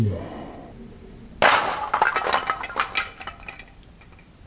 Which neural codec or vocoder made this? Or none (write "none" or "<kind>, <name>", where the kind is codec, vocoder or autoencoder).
none